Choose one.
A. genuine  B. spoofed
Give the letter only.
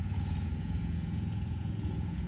B